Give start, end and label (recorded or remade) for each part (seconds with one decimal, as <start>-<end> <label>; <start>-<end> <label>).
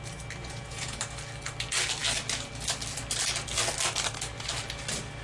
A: 0.0-0.4 recorded; 0.4-1.0 remade; 1.0-5.2 recorded